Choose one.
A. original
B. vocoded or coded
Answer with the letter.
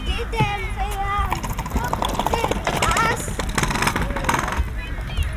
A